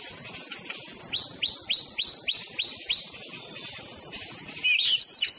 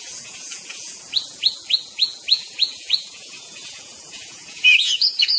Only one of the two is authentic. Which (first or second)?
first